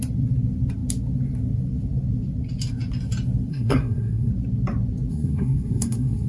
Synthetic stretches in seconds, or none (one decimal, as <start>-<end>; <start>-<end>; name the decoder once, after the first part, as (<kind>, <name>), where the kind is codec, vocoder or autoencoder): 3.5-4.3 (codec, SNAC); 5.1-6.3